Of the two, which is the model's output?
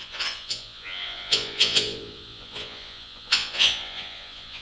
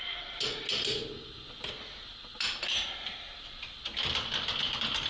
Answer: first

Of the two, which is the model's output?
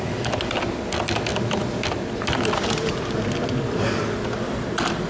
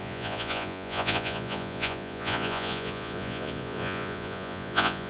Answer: second